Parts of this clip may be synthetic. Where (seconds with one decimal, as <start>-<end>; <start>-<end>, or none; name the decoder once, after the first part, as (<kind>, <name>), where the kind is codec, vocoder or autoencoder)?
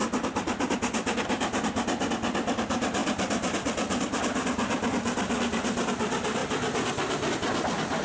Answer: none